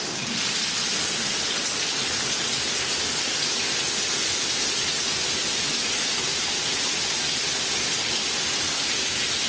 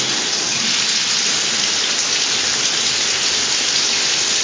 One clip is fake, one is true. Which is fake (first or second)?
first